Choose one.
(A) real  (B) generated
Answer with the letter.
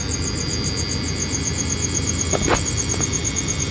A